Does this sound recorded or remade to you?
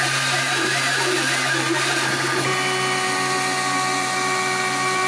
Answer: recorded